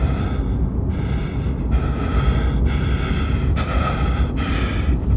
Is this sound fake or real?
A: real